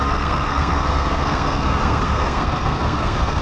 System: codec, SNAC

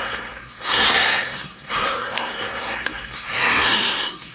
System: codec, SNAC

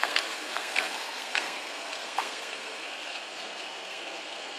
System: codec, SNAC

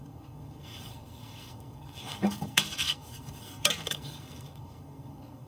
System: codec, SNAC